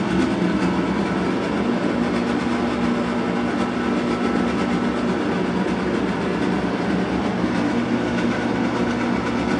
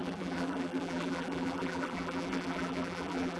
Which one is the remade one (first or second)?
second